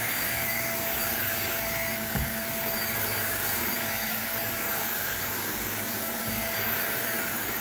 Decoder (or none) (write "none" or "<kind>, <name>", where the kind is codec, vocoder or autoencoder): codec, DAC